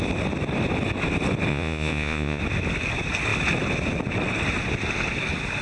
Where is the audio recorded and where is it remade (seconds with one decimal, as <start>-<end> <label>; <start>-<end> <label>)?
0.0-1.5 recorded; 1.5-2.4 remade; 2.4-5.6 recorded